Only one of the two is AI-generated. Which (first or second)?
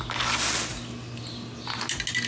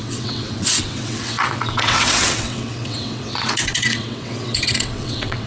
second